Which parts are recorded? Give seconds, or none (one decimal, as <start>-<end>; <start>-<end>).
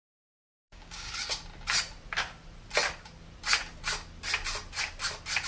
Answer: 1.1-5.5